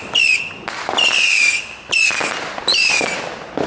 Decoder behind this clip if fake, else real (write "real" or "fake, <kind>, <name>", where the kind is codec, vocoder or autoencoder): real